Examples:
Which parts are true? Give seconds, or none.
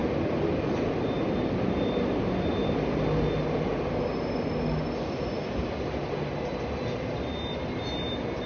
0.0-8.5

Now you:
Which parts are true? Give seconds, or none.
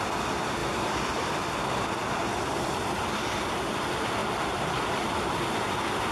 0.0-0.6; 1.6-6.1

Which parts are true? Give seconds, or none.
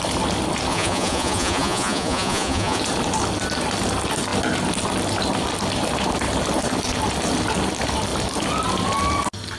0.0-0.7; 2.8-9.6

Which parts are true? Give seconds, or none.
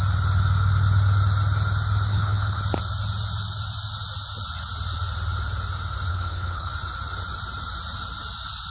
0.0-2.1; 2.6-6.1; 6.7-8.7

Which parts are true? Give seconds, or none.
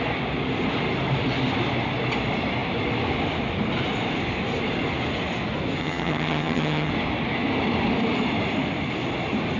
0.0-5.8; 6.9-9.6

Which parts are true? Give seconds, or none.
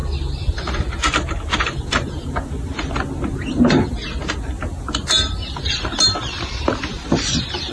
0.0-7.7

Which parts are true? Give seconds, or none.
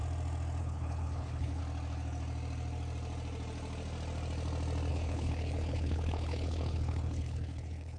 0.0-0.6; 1.6-4.9